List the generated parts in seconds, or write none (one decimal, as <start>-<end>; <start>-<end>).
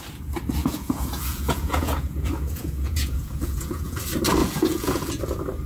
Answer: 0.6-4.0; 4.4-5.2